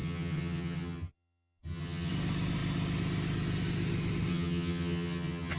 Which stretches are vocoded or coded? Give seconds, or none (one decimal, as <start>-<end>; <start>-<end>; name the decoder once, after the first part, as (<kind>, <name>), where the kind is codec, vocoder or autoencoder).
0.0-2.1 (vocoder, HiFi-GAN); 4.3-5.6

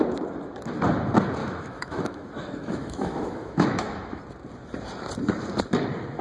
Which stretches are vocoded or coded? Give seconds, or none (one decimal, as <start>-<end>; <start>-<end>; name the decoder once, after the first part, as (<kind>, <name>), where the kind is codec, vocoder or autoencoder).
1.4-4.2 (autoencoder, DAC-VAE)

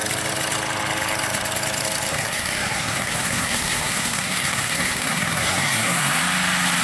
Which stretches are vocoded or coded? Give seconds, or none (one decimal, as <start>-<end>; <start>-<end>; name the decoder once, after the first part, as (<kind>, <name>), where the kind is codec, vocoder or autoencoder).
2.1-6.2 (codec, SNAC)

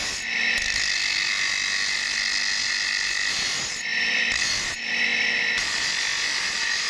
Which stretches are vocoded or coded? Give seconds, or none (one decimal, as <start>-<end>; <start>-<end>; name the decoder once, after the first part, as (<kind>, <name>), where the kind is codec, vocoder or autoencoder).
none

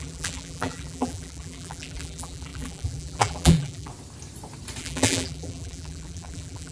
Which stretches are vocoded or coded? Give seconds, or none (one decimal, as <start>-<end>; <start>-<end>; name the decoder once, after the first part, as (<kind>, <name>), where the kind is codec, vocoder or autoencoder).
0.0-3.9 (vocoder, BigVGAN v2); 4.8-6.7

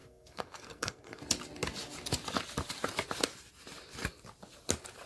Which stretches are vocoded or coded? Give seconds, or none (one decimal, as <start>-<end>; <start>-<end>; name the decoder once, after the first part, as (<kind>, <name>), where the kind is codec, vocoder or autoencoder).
0.0-1.2 (codec, SNAC)

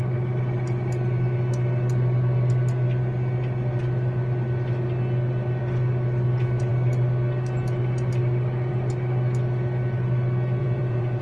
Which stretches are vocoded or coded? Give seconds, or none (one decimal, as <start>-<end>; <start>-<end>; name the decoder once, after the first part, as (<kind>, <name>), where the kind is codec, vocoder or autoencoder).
10.6-11.2 (vocoder, Vocos)